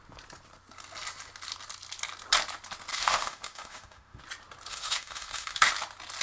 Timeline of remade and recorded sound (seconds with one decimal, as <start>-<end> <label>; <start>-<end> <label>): 0.0-2.9 recorded; 2.9-4.2 remade; 4.2-4.7 recorded; 4.7-5.7 remade; 5.7-6.2 recorded